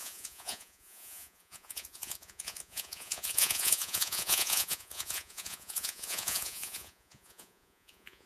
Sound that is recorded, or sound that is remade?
remade